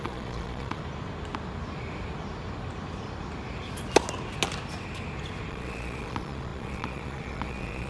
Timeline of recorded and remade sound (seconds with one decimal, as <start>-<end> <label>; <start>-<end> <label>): 0.0-0.8 remade; 0.8-5.5 recorded; 5.5-7.9 remade